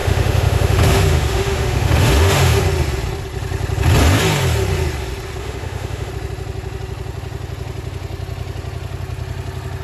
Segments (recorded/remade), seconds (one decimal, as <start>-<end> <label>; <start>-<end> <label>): 0.0-2.6 remade; 2.6-5.4 recorded; 5.4-6.1 remade; 6.1-9.8 recorded